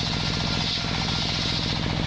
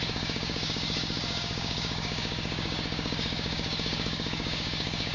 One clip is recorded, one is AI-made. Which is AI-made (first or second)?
second